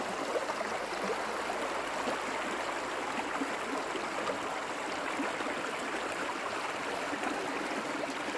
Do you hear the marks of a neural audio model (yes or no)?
no